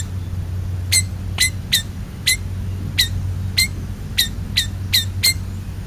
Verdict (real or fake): real